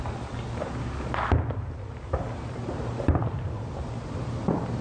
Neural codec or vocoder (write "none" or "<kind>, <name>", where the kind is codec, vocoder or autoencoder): none